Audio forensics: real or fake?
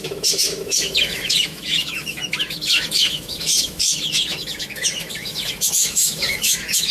fake